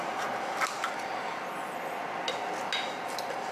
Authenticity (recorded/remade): recorded